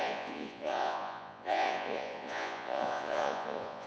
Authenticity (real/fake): fake